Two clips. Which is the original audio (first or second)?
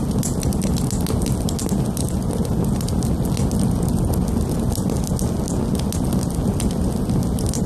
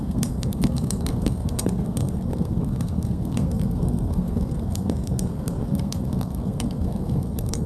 first